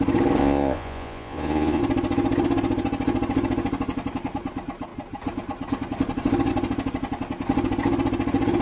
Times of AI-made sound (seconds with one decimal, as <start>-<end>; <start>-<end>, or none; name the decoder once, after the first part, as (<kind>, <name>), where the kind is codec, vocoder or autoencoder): 0.4-1.8 (vocoder, Vocos)